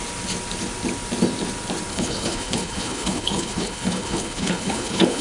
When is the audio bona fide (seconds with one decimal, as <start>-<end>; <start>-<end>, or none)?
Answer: 0.0-1.9